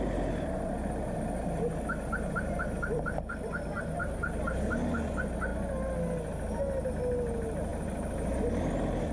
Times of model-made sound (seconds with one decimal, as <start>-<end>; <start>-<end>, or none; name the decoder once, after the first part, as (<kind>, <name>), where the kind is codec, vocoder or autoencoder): none